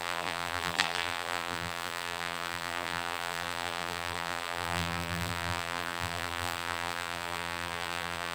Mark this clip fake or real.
fake